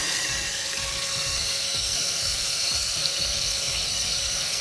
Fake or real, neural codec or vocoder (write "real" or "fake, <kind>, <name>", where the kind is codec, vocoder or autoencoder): fake, codec, SNAC